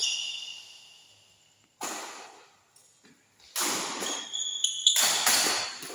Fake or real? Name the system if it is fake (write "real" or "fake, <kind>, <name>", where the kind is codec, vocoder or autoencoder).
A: real